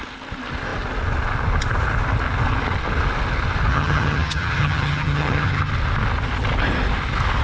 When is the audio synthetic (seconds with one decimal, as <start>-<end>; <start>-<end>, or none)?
3.7-5.7